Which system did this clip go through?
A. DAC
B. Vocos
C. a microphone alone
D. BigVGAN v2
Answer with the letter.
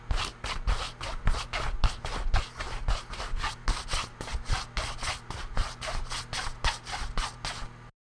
C